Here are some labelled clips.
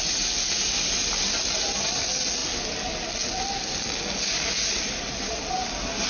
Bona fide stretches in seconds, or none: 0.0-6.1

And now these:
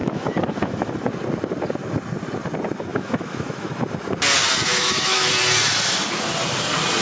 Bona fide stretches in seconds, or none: 0.9-2.9; 3.7-4.7; 5.3-7.0

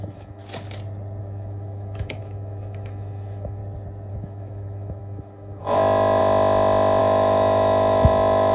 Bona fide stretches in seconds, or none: 0.4-1.2; 3.6-4.1; 6.2-7.0

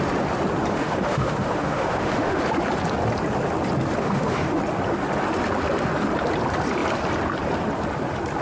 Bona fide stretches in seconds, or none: 0.0-0.7; 2.4-4.0; 4.6-8.4

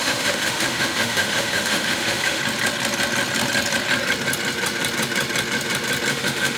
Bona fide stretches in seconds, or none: 2.4-6.1

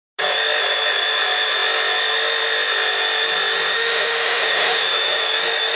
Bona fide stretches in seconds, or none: 0.0-3.7; 5.2-5.8